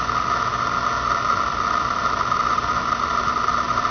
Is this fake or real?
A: real